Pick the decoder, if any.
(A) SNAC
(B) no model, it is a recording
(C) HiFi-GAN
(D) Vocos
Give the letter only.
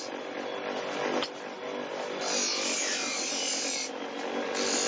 B